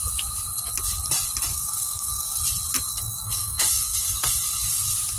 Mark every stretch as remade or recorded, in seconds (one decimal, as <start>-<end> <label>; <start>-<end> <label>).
0.0-1.5 recorded; 1.5-2.4 remade; 2.4-2.9 recorded; 2.9-4.3 remade; 4.3-5.2 recorded